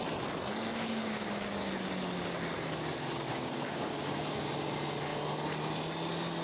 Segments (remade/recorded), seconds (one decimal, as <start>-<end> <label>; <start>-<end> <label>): 0.0-0.7 recorded; 0.7-1.7 remade; 1.7-3.3 recorded; 3.3-4.2 remade; 4.2-6.4 recorded